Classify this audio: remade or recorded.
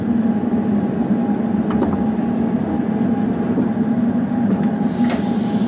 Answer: recorded